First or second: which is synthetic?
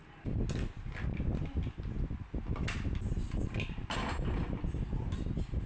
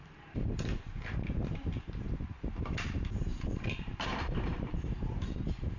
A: second